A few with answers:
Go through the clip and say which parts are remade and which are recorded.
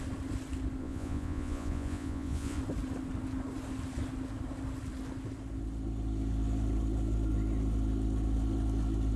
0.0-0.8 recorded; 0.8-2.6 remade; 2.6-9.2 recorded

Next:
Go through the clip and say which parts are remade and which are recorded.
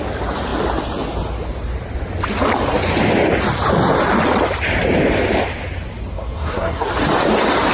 0.0-6.1 recorded; 6.1-6.9 remade; 6.9-7.7 recorded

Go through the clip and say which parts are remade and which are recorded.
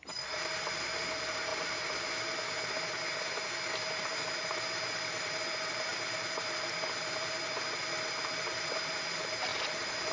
0.0-10.1 recorded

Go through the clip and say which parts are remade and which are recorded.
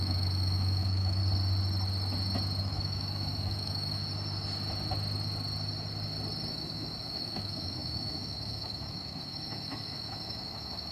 0.0-1.2 remade; 1.2-2.6 recorded; 2.6-4.0 remade; 4.0-6.5 recorded; 6.5-10.9 remade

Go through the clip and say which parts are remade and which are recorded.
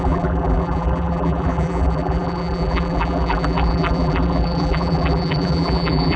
0.0-6.2 remade